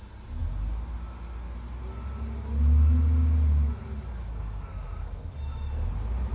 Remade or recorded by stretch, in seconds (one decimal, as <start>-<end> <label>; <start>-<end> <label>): 0.0-4.3 recorded; 4.3-5.3 remade; 5.3-6.3 recorded